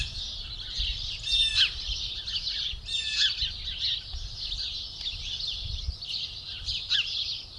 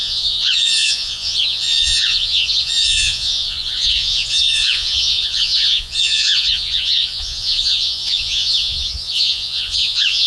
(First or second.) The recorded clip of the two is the first